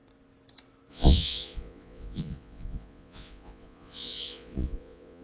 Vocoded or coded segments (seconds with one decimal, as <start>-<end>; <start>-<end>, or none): 0.9-5.2